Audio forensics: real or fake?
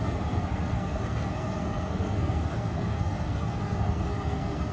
fake